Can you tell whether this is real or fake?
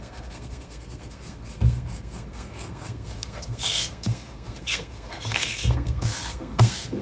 fake